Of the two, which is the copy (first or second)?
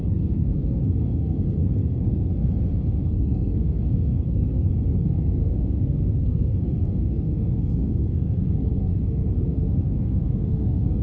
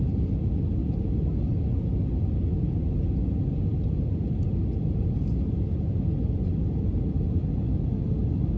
first